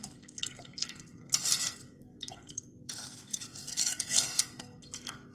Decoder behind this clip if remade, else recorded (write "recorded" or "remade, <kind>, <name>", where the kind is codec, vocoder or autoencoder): remade, codec, SNAC